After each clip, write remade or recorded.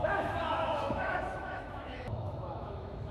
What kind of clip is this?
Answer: remade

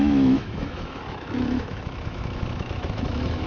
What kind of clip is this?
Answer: remade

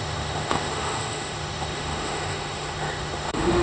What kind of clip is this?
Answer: remade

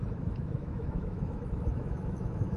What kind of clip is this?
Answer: remade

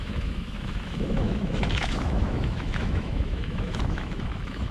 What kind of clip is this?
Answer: remade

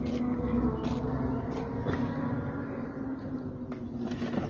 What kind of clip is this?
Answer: recorded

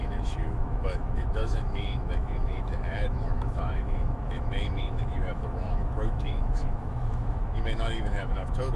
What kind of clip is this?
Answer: remade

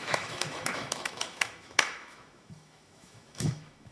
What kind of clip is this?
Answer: remade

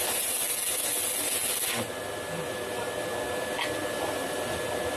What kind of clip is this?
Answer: recorded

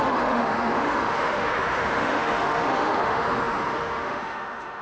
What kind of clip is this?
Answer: remade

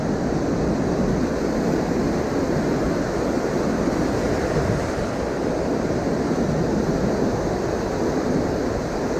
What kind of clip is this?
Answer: recorded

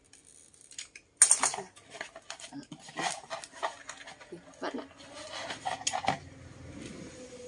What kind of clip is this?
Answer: recorded